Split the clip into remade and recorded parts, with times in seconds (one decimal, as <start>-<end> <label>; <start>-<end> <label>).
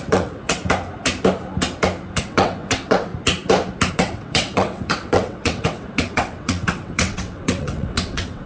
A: 0.0-0.6 remade; 0.6-2.2 recorded; 2.2-3.1 remade; 3.1-3.9 recorded; 3.9-8.5 remade